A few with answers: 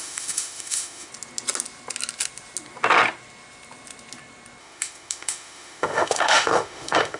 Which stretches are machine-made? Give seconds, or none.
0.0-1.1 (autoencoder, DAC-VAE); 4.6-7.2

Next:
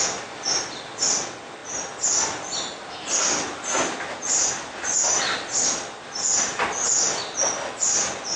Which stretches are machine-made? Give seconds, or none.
none

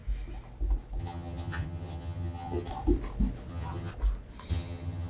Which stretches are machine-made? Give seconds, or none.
1.0-2.7 (vocoder, HiFi-GAN); 3.5-3.9; 4.5-5.1

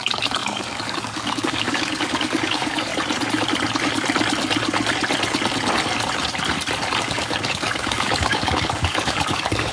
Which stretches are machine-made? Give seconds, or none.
0.0-2.9 (codec, DAC); 7.0-9.7

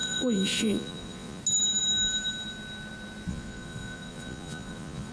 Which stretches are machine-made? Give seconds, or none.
0.0-1.4 (vocoder, Vocos); 3.3-5.1

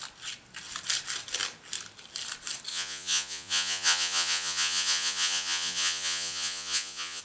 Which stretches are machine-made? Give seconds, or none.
2.7-7.2 (vocoder, Vocos)

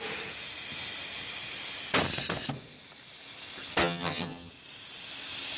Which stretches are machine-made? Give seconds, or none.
3.8-4.5 (vocoder, HiFi-GAN)

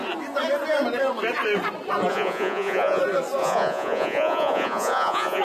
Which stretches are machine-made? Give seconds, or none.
2.1-3.0 (vocoder, Vocos); 3.4-5.4